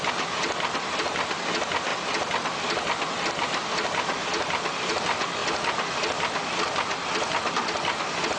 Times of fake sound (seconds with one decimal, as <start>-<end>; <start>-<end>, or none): none